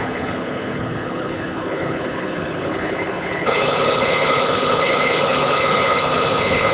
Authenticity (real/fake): fake